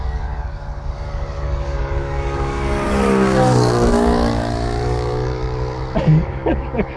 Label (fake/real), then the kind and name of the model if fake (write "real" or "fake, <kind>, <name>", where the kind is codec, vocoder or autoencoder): fake, codec, DAC